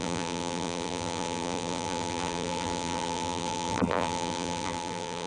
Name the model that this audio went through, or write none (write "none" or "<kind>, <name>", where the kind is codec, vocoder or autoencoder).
vocoder, BigVGAN v2